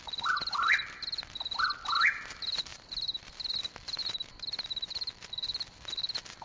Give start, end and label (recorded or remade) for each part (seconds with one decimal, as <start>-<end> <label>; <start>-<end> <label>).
0.0-2.7 recorded; 2.7-3.3 remade; 3.3-4.0 recorded; 4.0-5.3 remade; 5.3-6.4 recorded